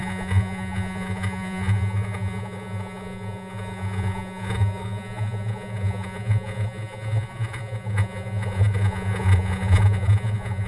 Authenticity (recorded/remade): remade